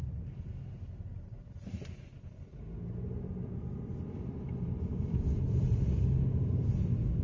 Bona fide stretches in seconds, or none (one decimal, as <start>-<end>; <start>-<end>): 0.0-7.2